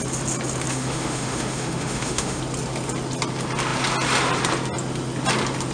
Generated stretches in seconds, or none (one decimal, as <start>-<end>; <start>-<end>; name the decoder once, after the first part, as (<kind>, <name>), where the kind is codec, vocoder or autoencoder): 0.7-2.4 (autoencoder, DAC-VAE)